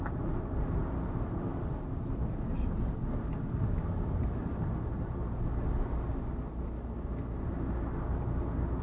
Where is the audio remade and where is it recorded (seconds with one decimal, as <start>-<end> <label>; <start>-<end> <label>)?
0.0-8.8 recorded